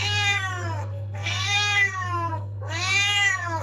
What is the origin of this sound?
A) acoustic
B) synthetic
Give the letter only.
B